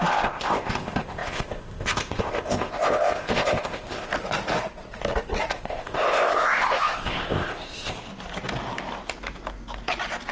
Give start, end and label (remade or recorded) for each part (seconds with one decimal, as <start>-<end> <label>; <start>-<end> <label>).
0.0-4.1 remade; 4.1-5.5 recorded; 5.5-8.1 remade; 8.1-10.3 recorded